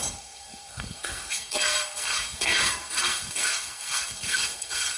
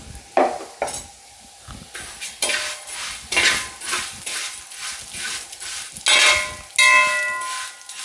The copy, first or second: first